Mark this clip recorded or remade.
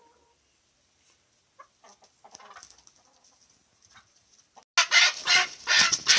recorded